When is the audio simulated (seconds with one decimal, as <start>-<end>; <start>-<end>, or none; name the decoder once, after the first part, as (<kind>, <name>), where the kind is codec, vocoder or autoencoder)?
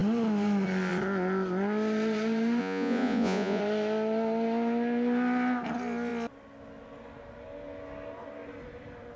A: 2.6-3.6 (vocoder, Vocos)